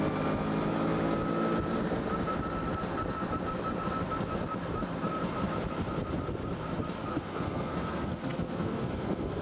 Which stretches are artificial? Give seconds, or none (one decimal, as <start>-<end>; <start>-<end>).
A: 7.1-9.4